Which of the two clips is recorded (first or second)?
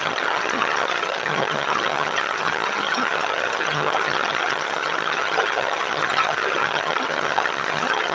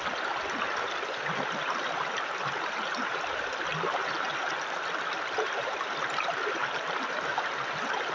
second